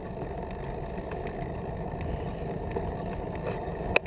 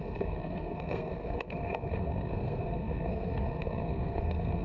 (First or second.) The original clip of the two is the first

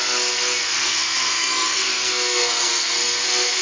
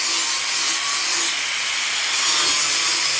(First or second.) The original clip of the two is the second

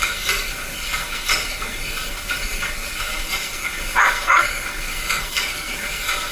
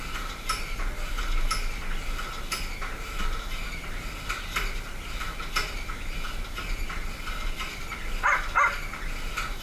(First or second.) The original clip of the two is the second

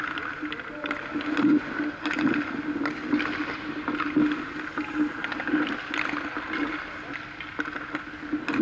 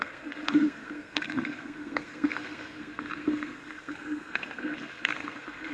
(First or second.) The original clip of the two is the first